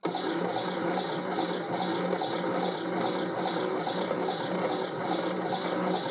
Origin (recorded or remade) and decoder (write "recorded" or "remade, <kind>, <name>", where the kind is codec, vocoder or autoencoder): recorded